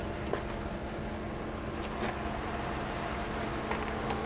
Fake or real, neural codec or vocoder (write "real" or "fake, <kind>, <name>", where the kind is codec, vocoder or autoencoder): real